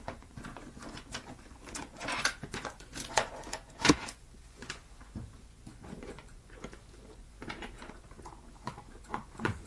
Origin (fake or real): fake